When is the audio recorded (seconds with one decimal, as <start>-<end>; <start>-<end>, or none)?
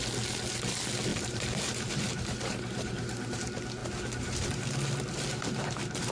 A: 0.0-1.1; 3.4-3.8